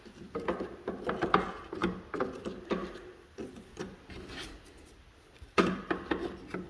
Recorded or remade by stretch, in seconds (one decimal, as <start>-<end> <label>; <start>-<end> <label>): 0.0-6.7 recorded